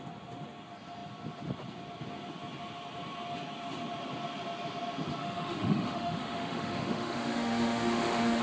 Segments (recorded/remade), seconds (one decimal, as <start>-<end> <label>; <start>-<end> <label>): 0.0-5.2 recorded; 5.2-8.4 remade